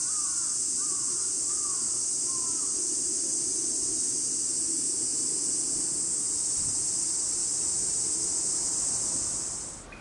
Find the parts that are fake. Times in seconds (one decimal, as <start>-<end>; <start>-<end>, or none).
none